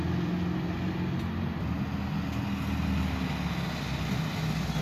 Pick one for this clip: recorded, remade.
recorded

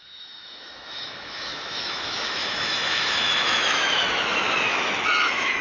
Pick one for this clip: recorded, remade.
remade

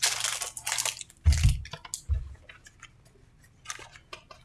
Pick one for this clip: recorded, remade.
recorded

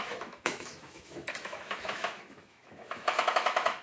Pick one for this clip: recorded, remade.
remade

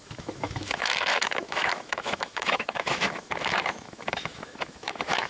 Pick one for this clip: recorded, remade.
remade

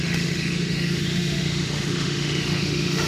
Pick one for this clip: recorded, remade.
remade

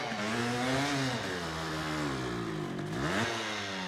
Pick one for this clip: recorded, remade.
recorded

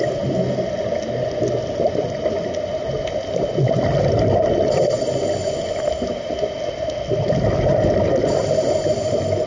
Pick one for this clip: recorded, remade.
recorded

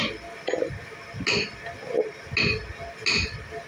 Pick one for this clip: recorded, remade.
recorded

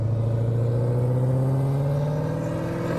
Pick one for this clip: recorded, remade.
recorded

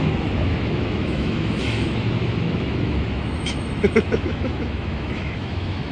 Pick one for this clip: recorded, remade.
remade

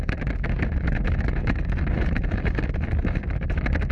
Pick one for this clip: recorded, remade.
remade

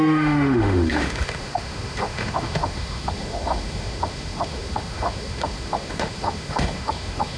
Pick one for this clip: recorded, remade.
remade